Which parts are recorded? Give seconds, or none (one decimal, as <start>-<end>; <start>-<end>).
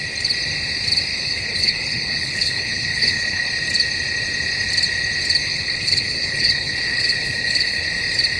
0.0-1.1; 3.5-5.4; 7.9-8.4